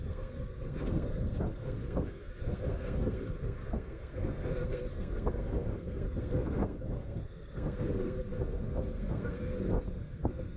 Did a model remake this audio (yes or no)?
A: yes